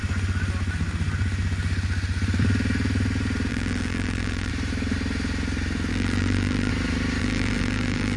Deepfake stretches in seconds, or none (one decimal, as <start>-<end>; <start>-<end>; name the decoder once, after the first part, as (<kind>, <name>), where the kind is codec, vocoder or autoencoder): 3.5-4.5 (vocoder, BigVGAN v2); 5.9-6.7; 7.2-8.2